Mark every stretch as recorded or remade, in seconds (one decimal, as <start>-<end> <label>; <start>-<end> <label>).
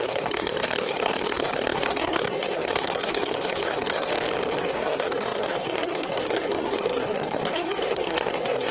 0.0-4.1 remade; 4.1-4.6 recorded; 4.6-8.7 remade